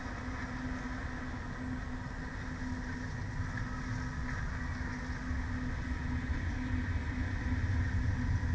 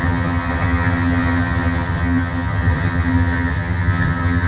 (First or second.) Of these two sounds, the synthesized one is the second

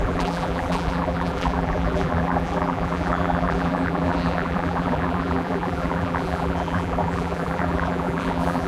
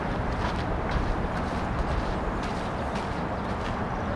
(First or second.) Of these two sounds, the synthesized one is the first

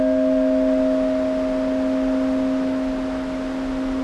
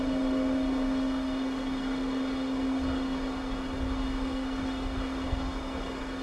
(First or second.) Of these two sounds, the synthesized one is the second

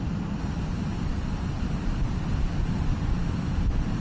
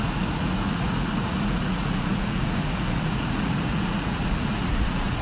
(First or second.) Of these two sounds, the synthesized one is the second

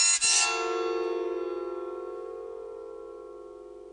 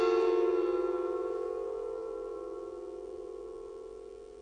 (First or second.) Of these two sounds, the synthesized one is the second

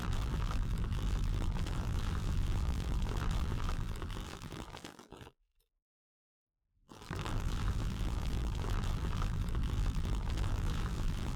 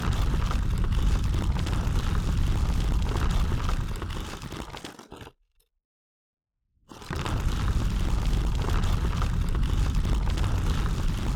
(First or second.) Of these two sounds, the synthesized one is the first